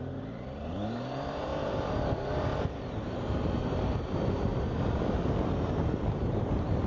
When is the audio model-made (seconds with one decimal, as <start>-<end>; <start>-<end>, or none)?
0.0-2.5; 3.2-4.5; 5.6-6.9